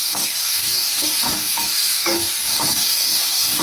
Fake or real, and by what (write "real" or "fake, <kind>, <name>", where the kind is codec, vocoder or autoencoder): fake, codec, DAC